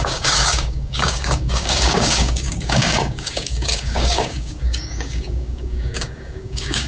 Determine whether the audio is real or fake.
fake